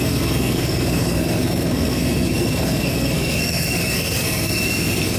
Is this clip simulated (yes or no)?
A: yes